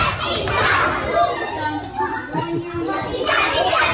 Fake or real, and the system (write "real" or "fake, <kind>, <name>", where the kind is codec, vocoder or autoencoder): real